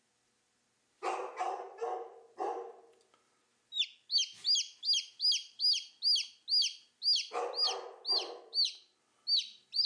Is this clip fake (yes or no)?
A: no